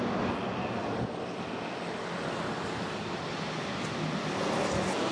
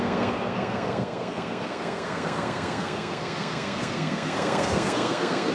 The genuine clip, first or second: first